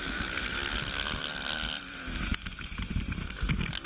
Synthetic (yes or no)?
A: no